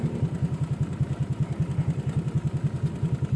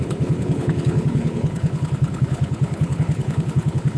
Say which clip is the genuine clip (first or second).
first